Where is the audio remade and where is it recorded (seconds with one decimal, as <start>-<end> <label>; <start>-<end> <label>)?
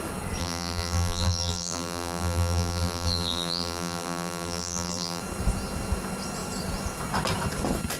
0.0-0.4 recorded; 0.4-5.2 remade; 5.2-8.0 recorded